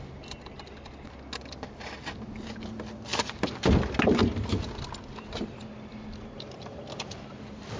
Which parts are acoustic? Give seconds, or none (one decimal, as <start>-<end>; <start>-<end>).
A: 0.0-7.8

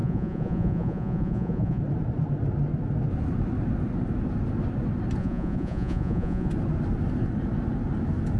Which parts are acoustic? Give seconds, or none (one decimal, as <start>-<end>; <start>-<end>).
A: 1.8-5.2; 6.5-8.4

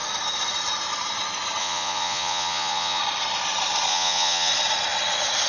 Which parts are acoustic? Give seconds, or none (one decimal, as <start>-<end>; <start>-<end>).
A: 0.0-1.6; 3.0-3.9; 4.5-5.5

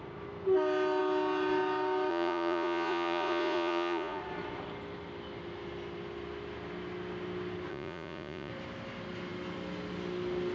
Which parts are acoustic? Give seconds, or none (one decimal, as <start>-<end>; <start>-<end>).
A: 0.0-2.1; 4.2-7.7; 8.5-10.5